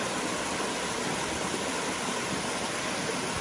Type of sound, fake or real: real